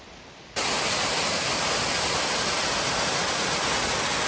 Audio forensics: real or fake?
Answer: real